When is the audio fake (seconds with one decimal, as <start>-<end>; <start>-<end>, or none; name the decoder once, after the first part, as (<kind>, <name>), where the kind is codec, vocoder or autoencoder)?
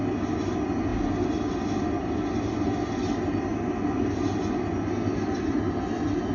none